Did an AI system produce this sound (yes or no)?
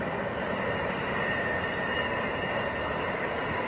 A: no